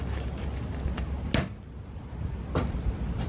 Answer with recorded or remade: recorded